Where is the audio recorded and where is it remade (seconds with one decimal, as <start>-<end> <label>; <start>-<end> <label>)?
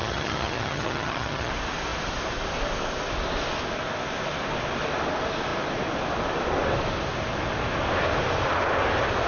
0.0-1.5 remade; 1.5-9.3 recorded